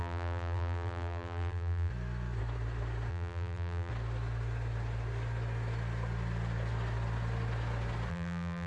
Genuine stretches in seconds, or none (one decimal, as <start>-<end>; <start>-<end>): 1.9-3.1; 3.9-8.1